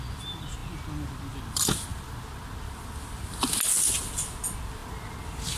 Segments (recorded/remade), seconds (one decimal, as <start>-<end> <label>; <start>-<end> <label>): 0.0-5.6 recorded